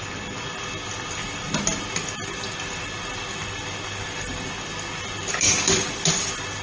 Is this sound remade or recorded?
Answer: recorded